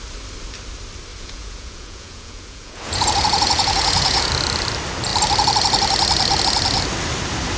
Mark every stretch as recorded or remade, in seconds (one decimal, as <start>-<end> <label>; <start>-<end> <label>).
0.0-1.1 recorded; 1.1-4.3 remade; 4.3-7.6 recorded